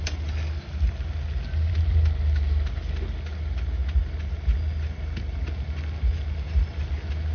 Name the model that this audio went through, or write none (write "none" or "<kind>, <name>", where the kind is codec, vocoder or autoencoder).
none